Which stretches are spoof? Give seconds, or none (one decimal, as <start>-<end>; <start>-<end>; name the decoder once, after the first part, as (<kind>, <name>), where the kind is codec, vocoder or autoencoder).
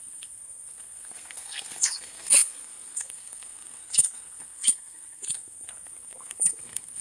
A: 0.0-7.0 (codec, SNAC)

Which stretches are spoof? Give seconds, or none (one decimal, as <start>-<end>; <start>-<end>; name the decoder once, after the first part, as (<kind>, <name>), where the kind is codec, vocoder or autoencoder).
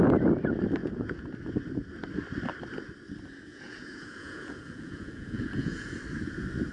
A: 0.8-1.3 (vocoder, Vocos); 3.5-5.9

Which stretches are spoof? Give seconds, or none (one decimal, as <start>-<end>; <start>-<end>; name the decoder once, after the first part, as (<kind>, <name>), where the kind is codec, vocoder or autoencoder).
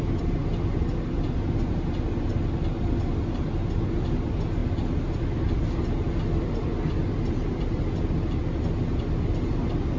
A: none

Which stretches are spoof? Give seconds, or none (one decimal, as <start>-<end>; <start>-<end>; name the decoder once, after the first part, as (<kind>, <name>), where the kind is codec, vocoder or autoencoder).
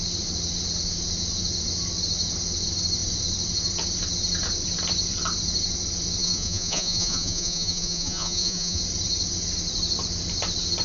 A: 6.2-8.8 (vocoder, Vocos)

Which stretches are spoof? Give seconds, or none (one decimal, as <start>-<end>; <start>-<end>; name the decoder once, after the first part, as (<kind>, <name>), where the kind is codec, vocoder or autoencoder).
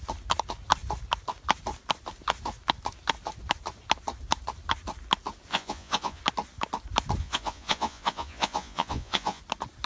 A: 5.5-6.2 (vocoder, Vocos); 7.2-9.4